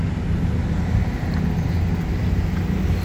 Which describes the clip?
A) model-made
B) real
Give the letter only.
B